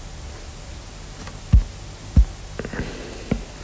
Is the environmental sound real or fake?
real